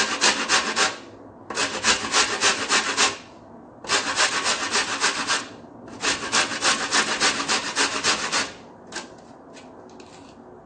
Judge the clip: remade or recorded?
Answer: recorded